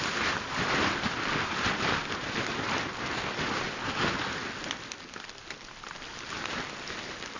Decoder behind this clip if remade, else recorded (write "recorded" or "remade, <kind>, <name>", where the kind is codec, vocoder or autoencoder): recorded